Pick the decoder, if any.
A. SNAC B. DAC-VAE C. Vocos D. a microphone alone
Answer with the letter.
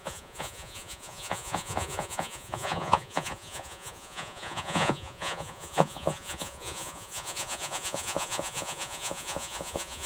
C